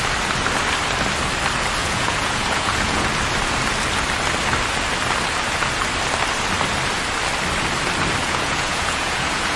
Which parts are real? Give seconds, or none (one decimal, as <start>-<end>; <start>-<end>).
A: 0.0-1.8; 3.1-8.2